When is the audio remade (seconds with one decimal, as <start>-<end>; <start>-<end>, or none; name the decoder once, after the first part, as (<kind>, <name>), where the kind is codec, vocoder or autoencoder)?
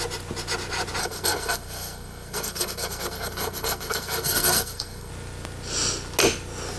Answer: 1.0-5.1 (codec, SNAC)